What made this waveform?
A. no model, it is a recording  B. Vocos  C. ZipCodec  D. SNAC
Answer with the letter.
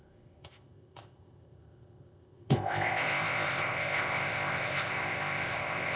C